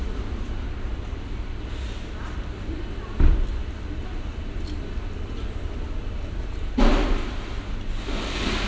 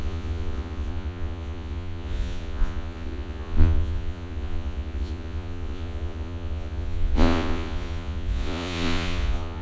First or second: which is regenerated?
second